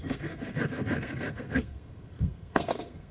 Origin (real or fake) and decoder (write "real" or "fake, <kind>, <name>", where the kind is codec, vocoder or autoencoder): fake, codec, SNAC